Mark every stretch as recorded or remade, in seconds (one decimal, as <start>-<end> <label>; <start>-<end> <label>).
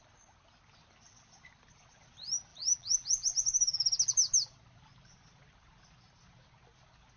0.0-2.5 recorded; 2.5-4.1 remade; 4.1-7.2 recorded